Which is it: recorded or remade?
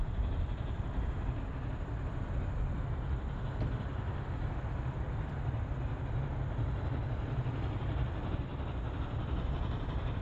recorded